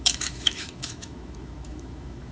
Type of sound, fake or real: fake